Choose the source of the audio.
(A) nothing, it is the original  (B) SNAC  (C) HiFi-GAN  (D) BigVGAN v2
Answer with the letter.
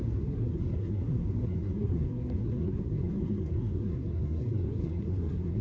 B